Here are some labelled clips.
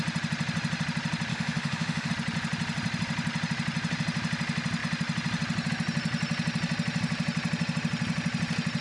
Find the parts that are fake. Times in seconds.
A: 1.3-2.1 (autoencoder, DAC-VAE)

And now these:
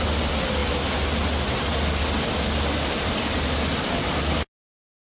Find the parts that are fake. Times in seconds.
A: none